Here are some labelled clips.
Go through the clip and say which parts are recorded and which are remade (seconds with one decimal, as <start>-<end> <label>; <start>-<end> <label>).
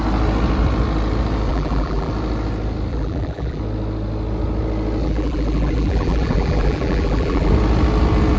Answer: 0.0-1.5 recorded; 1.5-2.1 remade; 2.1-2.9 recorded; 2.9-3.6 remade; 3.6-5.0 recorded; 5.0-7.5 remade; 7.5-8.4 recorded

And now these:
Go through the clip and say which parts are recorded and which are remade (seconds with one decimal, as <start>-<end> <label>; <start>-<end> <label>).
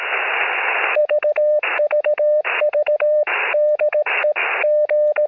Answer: 0.0-1.0 recorded; 1.0-4.2 remade; 4.2-5.3 recorded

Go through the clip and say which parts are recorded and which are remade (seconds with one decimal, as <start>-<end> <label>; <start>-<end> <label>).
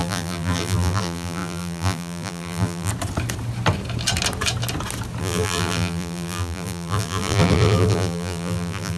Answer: 0.0-2.9 remade; 2.9-5.2 recorded; 5.2-9.0 remade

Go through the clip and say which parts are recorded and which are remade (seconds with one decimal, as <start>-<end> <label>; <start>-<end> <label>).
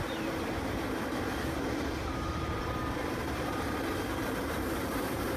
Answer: 0.0-2.0 recorded; 2.0-5.4 remade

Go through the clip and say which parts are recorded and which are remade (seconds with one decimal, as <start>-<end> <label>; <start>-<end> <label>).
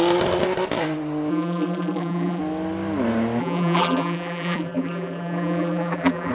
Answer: 0.0-1.3 recorded; 1.3-2.4 remade; 2.4-3.4 recorded; 3.4-6.3 remade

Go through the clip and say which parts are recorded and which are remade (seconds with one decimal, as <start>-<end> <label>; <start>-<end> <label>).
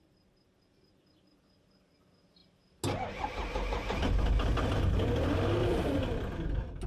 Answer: 0.0-5.6 recorded; 5.6-6.3 remade; 6.3-6.9 recorded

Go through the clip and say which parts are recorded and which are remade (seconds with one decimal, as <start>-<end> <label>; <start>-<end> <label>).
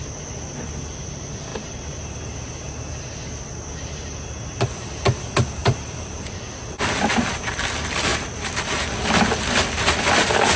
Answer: 0.0-1.5 recorded; 1.5-2.2 remade; 2.2-5.6 recorded; 5.6-6.2 remade; 6.2-8.1 recorded; 8.1-8.9 remade; 8.9-10.6 recorded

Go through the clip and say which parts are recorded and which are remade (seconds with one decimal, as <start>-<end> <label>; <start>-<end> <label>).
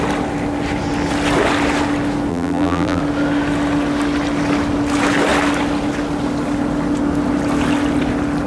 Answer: 0.0-2.3 recorded; 2.3-3.0 remade; 3.0-8.5 recorded